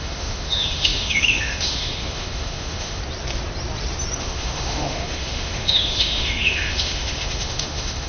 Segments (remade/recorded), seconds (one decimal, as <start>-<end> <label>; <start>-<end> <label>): 0.0-3.0 remade; 3.0-4.2 recorded; 4.2-8.1 remade